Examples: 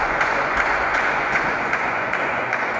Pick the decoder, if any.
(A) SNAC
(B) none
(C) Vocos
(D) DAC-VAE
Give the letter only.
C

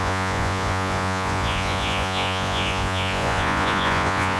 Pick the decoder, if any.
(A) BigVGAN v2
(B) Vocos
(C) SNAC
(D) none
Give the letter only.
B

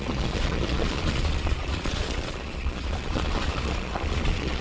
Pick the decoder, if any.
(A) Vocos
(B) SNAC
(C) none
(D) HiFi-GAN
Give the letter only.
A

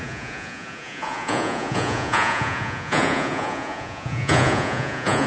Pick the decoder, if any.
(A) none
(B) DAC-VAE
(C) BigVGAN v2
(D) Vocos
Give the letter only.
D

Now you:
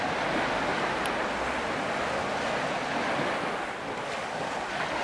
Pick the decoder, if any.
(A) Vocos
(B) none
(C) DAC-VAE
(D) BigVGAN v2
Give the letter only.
B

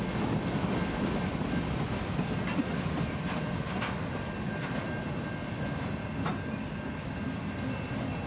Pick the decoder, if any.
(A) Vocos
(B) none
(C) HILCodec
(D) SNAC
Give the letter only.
B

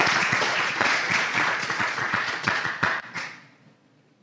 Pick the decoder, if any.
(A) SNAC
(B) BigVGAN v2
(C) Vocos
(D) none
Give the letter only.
C